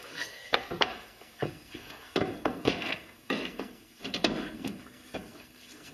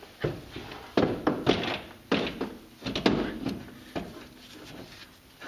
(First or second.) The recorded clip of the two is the second